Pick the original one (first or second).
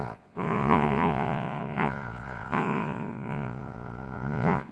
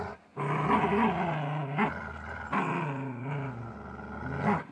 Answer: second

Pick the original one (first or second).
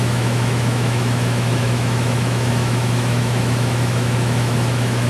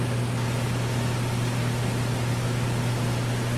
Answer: second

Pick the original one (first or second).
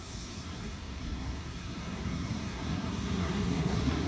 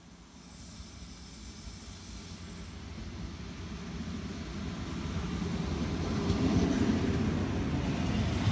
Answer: second